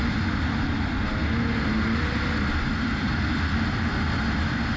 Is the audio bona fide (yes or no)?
yes